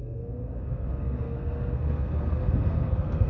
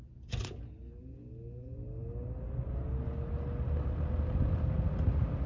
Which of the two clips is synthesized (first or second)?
first